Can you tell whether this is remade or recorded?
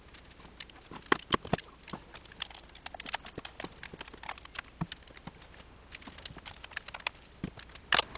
recorded